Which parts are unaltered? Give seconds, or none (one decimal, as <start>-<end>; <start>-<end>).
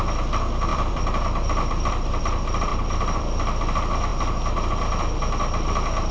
0.0-0.7; 2.2-2.7; 3.2-6.1